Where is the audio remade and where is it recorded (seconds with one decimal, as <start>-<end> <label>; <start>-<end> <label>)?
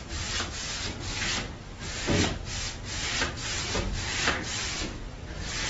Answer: 0.0-3.4 recorded; 3.4-5.7 remade